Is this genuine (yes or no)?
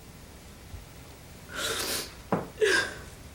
yes